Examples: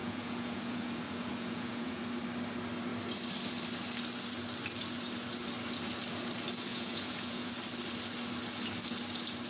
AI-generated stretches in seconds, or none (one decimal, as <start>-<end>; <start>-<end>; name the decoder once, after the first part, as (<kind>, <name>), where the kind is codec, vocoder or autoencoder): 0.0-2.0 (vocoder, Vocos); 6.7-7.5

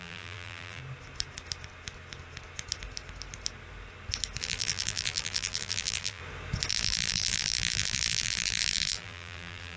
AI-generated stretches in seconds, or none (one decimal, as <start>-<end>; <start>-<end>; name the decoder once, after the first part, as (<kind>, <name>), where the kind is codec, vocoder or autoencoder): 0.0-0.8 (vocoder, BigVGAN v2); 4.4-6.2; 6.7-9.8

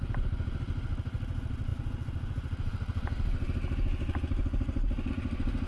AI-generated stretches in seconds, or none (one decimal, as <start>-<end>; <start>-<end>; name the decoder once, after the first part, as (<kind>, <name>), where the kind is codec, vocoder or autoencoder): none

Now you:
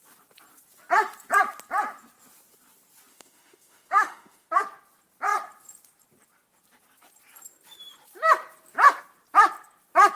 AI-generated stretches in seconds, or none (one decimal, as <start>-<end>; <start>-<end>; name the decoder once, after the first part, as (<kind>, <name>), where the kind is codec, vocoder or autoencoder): 3.1-4.5 (autoencoder, DAC-VAE)